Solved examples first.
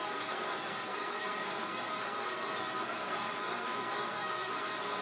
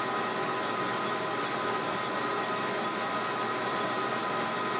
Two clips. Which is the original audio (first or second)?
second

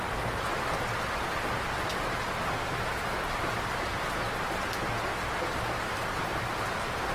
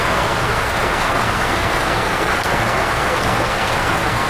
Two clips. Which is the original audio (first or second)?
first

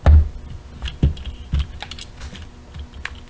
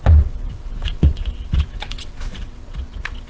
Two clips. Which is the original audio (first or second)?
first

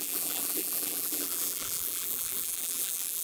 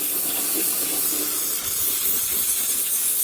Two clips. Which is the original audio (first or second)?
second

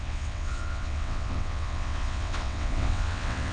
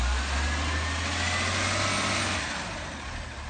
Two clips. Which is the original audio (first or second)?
second